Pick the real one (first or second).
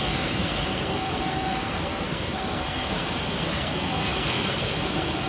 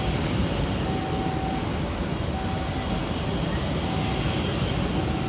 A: second